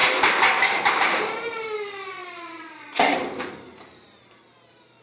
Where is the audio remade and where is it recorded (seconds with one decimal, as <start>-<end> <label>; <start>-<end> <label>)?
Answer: 0.0-0.9 recorded; 0.9-5.0 remade